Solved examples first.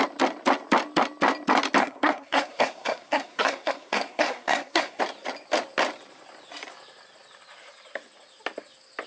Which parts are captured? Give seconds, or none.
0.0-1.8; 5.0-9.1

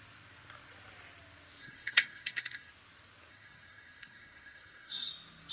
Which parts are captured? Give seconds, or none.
0.0-1.6; 2.7-3.3; 5.1-5.5

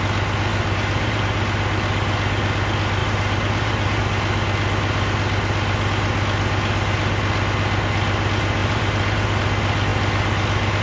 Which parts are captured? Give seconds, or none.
0.0-0.5; 1.2-3.0; 4.0-8.6; 9.4-10.8

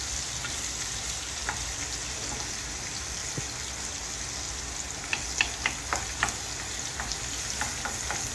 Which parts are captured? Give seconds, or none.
0.0-8.3

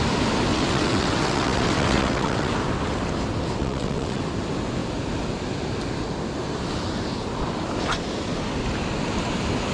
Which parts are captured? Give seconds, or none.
0.0-0.5; 2.5-3.6; 4.2-9.7

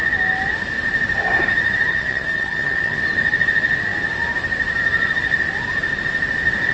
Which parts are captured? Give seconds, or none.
0.0-1.9; 3.0-6.7